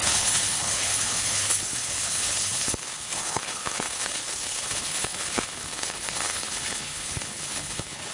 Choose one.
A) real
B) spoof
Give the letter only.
B